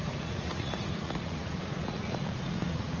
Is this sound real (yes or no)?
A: no